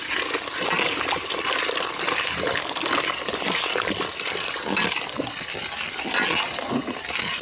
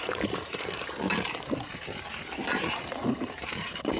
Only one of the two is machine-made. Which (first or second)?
second